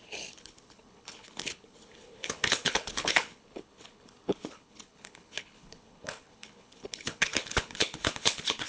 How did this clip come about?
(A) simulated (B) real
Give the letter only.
A